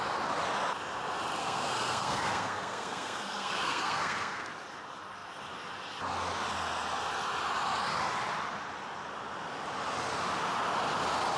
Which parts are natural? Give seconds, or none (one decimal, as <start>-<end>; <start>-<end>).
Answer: 0.0-1.4; 4.5-11.4